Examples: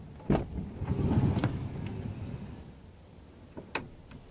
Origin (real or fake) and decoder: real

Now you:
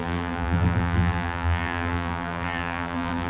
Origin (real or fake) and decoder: fake, vocoder, BigVGAN v2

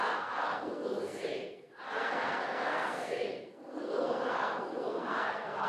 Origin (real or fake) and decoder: fake, codec, SNAC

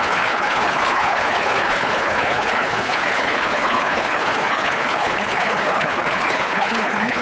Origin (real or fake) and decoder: fake, codec, HILCodec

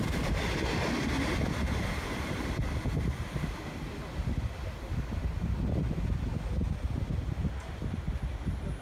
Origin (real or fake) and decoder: real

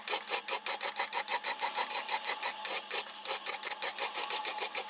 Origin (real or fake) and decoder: real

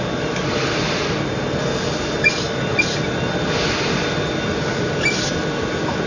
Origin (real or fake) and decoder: real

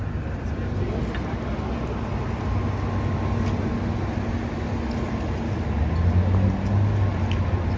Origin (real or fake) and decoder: real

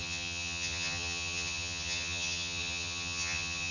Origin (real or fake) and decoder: fake, vocoder, HiFi-GAN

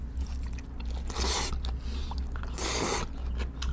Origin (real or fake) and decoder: real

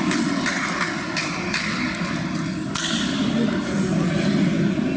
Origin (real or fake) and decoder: real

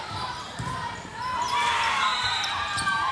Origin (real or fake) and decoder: fake, vocoder, BigVGAN v2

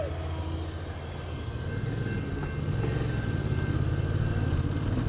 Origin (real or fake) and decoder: real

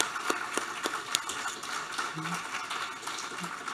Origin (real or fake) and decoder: real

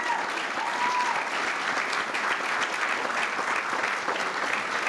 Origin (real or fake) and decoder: real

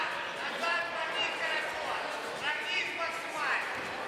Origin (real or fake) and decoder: fake, vocoder, BigVGAN v2